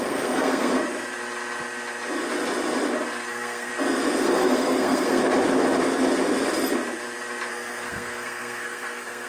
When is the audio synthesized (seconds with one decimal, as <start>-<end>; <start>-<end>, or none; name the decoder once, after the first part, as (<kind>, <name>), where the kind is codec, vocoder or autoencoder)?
0.0-0.7 (codec, SNAC); 3.3-3.7; 4.2-5.2; 7.5-9.3